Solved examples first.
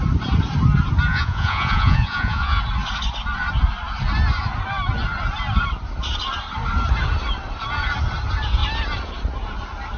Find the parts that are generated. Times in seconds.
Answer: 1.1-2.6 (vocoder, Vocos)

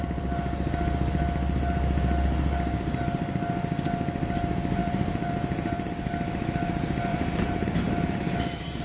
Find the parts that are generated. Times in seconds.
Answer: 4.8-5.9 (vocoder, BigVGAN v2); 7.1-8.8

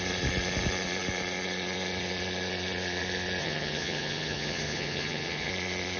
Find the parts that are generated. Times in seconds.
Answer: 3.4-5.5 (vocoder, HiFi-GAN)

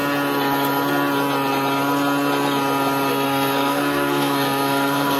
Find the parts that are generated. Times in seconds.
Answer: 3.1-5.2 (codec, SNAC)

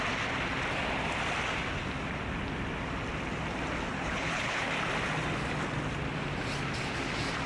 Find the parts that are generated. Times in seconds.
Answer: 3.9-4.7 (codec, HILCodec)

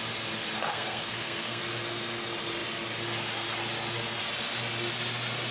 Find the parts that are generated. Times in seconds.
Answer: 0.7-1.6 (codec, SNAC)